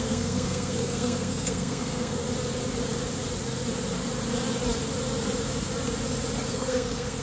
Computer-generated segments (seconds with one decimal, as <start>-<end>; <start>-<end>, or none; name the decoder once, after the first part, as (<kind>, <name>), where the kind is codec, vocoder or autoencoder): 0.0-2.2 (codec, SNAC); 6.5-7.2